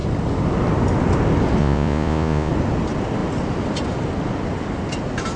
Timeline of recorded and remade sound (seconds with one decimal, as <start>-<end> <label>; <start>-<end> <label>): 0.0-1.6 recorded; 1.6-2.5 remade; 2.5-5.4 recorded